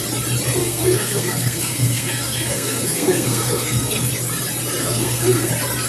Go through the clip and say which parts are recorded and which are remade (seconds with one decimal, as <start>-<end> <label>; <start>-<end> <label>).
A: 0.0-0.6 recorded; 0.6-4.1 remade; 4.1-4.8 recorded; 4.8-5.5 remade; 5.5-5.9 recorded